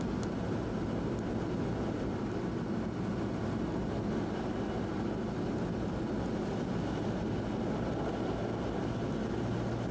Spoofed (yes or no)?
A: no